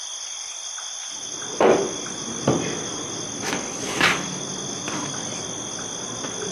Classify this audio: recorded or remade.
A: recorded